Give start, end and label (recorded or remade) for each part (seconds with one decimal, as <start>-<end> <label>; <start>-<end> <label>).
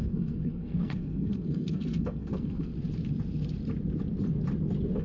0.0-2.7 remade; 2.7-5.0 recorded